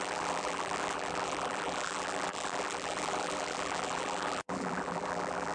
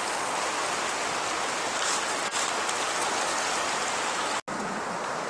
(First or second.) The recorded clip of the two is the second